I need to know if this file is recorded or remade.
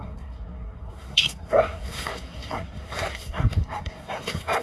remade